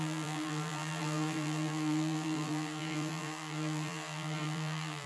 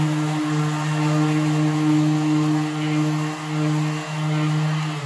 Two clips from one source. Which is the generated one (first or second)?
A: first